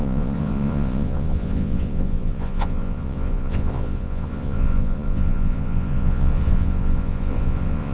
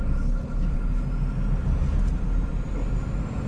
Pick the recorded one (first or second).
second